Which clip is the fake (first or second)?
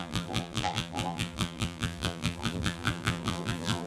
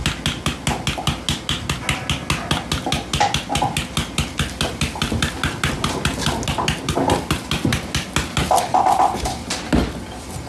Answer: first